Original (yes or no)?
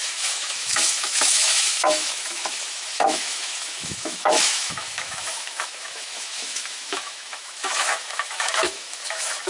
no